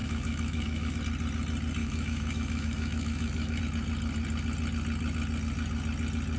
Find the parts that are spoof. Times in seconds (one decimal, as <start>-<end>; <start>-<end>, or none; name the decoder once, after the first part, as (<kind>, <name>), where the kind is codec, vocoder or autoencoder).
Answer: 0.0-1.0 (autoencoder, DAC-VAE); 1.8-3.6